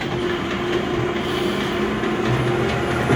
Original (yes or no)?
yes